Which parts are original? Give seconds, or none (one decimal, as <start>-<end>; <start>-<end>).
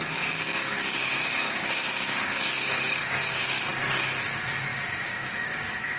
3.7-4.2